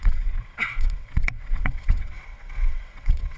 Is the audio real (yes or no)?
no